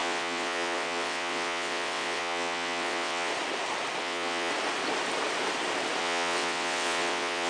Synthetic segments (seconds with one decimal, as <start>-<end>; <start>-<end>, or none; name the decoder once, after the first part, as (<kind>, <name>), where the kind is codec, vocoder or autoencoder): 0.0-3.3 (vocoder, WaveNeXt); 4.0-4.5; 6.0-7.5